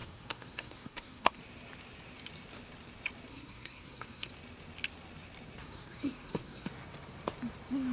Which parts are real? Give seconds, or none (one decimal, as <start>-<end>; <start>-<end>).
1.4-3.3; 4.3-5.6; 6.7-7.9